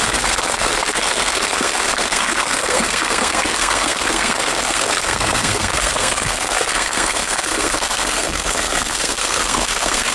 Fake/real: fake